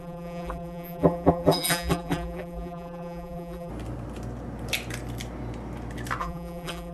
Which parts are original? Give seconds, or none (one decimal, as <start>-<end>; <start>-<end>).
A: 3.7-6.2